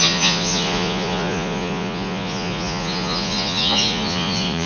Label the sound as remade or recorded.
remade